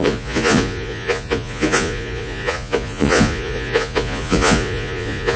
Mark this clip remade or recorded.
remade